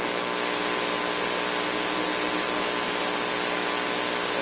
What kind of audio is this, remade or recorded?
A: recorded